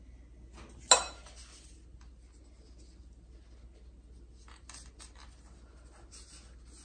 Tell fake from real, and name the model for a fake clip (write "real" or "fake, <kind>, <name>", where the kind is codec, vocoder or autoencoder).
real